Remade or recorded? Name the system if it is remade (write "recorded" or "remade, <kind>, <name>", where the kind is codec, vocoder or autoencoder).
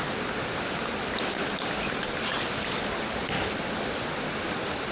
recorded